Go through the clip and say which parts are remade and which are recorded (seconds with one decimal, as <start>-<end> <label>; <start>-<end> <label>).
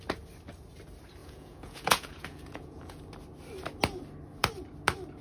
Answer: 0.0-1.2 recorded; 1.2-3.0 remade; 3.0-5.2 recorded